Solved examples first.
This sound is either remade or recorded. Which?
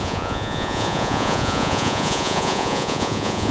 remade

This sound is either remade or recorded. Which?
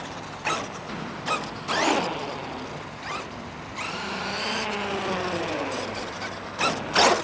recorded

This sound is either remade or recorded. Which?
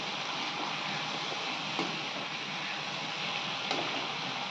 recorded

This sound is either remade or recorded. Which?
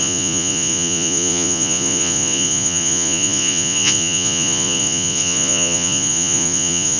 remade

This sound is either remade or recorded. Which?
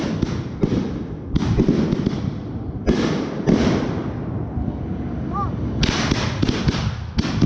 recorded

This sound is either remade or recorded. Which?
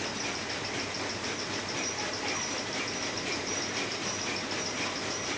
recorded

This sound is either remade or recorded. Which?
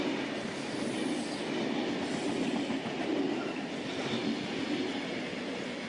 recorded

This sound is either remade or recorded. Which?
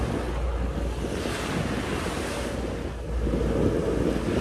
recorded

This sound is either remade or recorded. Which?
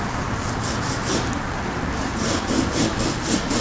recorded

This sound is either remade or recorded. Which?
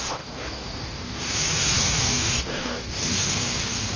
remade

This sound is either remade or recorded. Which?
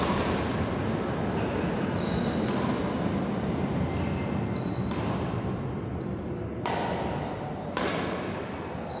recorded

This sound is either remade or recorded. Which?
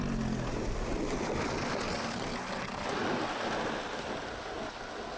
recorded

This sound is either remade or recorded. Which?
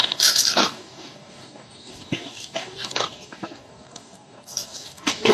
remade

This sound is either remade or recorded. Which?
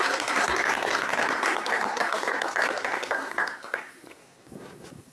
remade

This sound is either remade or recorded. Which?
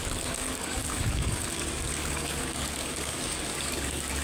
remade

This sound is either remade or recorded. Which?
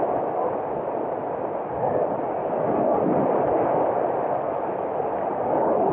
recorded